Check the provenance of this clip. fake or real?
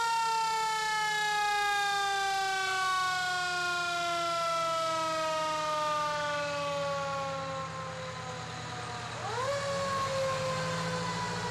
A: real